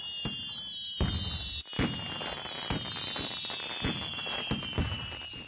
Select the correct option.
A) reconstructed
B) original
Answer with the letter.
B